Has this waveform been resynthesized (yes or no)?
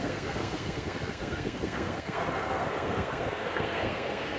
yes